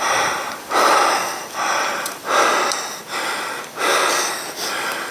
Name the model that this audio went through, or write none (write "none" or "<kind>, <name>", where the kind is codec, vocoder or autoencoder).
none